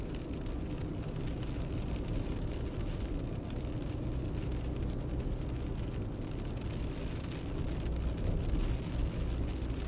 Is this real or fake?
real